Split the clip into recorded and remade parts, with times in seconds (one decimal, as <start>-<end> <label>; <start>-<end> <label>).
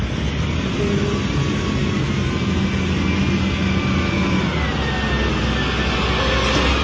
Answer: 0.0-6.8 recorded